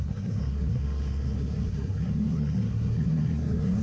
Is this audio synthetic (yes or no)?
yes